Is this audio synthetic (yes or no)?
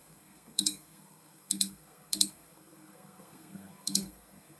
yes